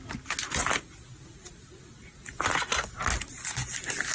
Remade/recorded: recorded